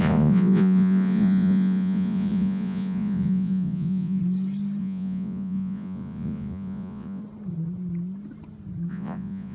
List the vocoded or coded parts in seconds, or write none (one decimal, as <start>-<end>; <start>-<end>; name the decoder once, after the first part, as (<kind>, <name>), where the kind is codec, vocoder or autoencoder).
0.0-4.2 (vocoder, Vocos); 4.8-7.2; 8.9-9.5